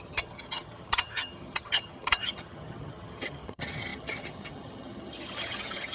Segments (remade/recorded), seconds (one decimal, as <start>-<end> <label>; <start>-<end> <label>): 0.0-5.9 remade